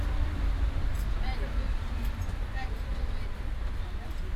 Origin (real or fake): real